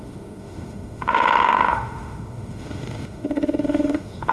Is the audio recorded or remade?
remade